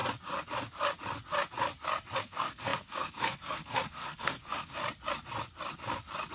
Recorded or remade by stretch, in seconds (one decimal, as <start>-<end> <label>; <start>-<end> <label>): 0.0-2.2 recorded; 2.2-4.8 remade; 4.8-6.3 recorded